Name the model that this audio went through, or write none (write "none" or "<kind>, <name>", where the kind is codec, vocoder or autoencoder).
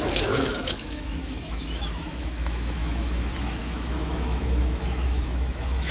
autoencoder, DAC-VAE